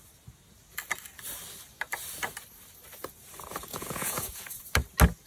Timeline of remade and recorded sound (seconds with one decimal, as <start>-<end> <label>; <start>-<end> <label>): 0.0-3.7 recorded; 3.7-4.6 remade; 4.6-5.3 recorded